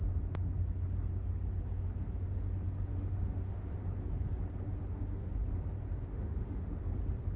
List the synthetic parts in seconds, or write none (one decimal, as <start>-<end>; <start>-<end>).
2.9-3.7; 4.8-5.3; 6.1-6.8